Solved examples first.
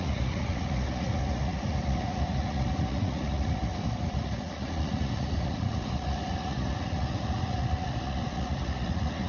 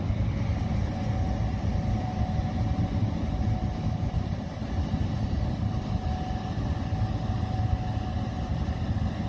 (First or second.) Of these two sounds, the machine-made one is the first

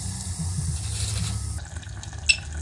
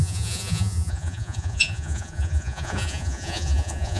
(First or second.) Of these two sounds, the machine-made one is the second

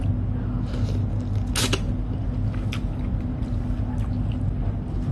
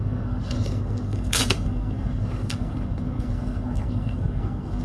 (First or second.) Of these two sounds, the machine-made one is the second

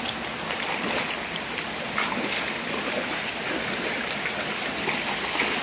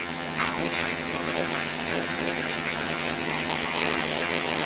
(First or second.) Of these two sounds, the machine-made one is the second